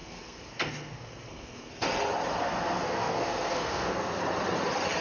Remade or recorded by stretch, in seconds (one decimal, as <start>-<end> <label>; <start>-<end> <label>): 0.0-1.7 remade; 1.7-2.4 recorded; 2.4-4.2 remade; 4.2-5.0 recorded